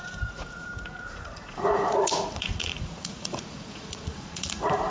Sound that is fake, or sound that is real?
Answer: fake